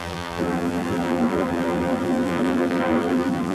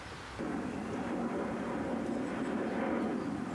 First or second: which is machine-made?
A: first